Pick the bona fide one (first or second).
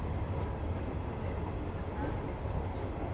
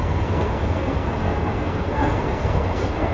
first